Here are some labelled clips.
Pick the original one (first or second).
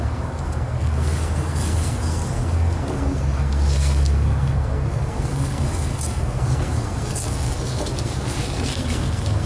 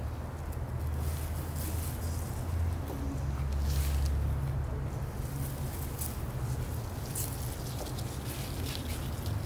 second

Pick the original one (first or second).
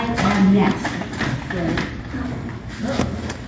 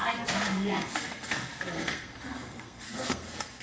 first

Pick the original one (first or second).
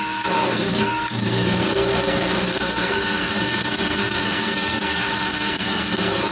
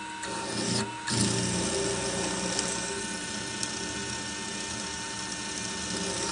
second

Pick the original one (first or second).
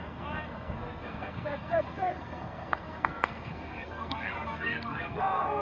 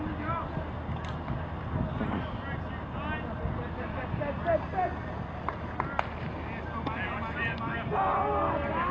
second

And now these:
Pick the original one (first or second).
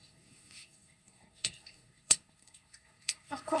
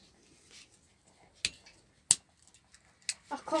second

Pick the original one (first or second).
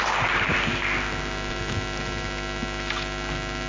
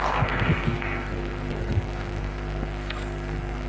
first